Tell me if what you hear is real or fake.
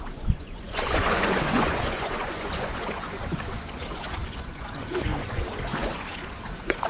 fake